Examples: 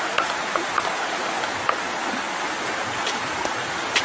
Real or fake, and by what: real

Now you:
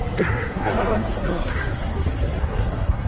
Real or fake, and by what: fake, codec, SNAC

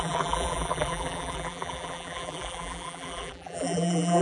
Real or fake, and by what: fake, vocoder, BigVGAN v2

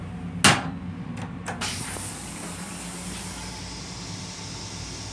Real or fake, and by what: real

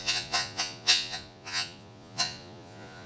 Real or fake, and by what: fake, vocoder, Vocos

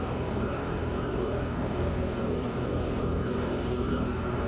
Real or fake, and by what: fake, codec, DAC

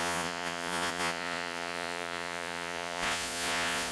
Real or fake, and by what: fake, vocoder, Vocos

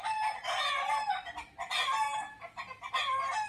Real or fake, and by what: real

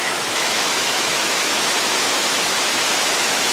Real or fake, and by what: fake, autoencoder, DAC-VAE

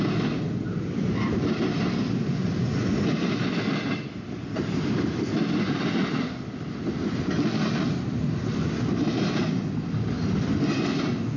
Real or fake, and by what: real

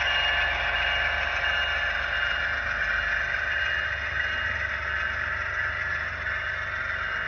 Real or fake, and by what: real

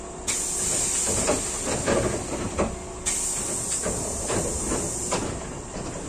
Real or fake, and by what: real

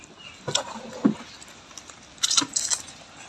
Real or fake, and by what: real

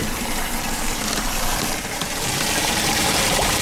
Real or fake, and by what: fake, vocoder, BigVGAN v2